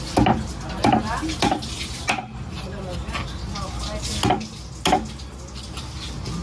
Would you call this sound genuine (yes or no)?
yes